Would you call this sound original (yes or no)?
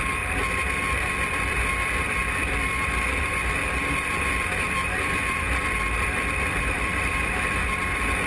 no